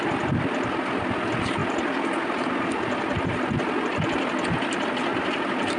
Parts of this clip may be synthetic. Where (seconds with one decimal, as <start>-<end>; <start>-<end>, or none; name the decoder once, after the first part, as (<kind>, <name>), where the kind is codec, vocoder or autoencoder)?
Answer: 1.6-3.3 (vocoder, BigVGAN v2); 5.1-5.8